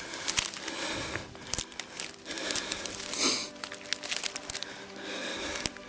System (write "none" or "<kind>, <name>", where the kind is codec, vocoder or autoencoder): none